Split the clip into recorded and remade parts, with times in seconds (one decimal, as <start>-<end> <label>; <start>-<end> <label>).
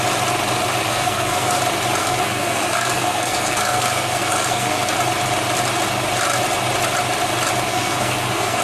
0.0-0.9 recorded; 0.9-1.6 remade; 1.6-2.0 recorded; 2.0-4.9 remade; 4.9-7.7 recorded; 7.7-8.6 remade